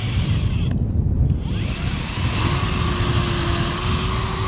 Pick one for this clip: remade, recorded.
recorded